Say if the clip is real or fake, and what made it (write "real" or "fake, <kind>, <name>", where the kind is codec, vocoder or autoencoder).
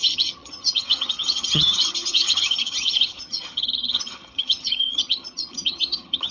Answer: fake, vocoder, HiFi-GAN